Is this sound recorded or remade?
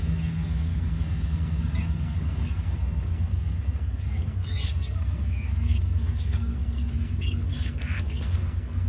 remade